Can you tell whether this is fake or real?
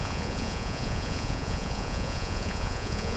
fake